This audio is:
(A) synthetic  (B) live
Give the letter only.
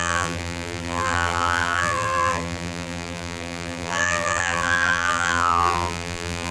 A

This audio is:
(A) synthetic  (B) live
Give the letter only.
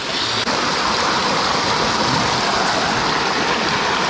B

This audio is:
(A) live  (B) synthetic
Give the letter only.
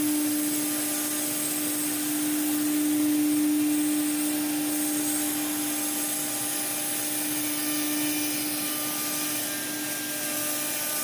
A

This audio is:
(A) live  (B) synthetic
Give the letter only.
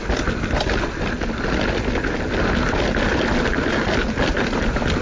A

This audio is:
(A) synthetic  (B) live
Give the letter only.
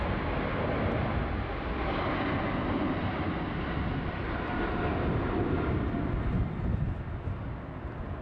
B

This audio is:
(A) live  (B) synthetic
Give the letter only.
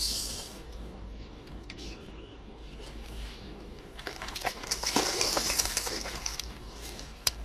B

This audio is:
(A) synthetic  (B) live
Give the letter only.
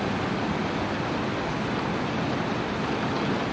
B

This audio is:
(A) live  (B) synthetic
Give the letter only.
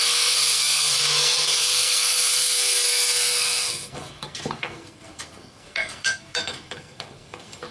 B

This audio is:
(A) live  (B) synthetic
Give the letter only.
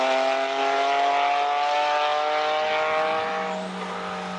A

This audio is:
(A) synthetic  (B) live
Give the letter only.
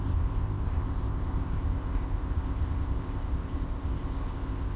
A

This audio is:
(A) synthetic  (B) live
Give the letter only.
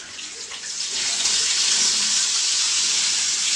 A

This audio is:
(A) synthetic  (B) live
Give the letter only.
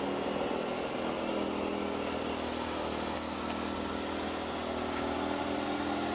B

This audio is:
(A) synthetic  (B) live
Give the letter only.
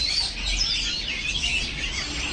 B